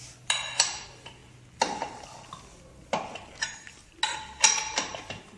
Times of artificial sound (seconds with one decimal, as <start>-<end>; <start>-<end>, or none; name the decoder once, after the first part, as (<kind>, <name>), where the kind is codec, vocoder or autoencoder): none